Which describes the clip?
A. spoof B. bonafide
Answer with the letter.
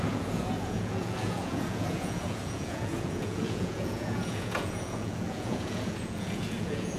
A